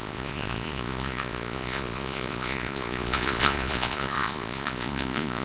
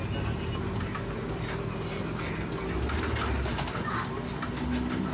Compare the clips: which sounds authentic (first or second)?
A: second